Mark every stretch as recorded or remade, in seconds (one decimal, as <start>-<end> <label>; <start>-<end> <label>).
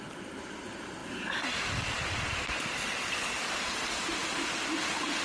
0.0-1.0 recorded; 1.0-1.6 remade; 1.6-5.2 recorded